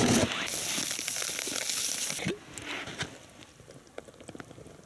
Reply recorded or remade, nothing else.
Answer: recorded